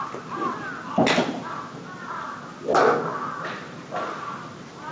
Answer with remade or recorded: recorded